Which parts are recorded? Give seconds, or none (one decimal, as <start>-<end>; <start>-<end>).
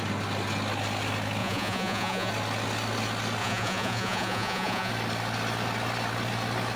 0.0-1.4; 2.3-3.4; 4.9-6.8